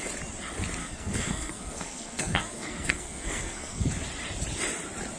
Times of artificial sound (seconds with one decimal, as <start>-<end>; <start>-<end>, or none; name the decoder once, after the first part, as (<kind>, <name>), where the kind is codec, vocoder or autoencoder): 0.8-3.9 (codec, SNAC)